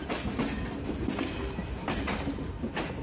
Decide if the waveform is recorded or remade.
recorded